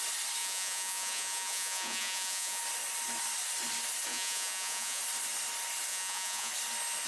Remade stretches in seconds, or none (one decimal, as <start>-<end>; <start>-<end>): 0.4-2.6; 4.1-5.0; 5.9-6.5